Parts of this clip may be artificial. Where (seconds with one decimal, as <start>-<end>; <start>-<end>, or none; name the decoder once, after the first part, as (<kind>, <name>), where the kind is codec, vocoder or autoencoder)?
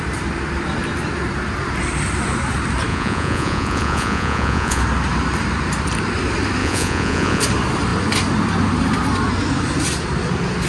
2.9-4.8 (vocoder, Vocos); 6.6-7.4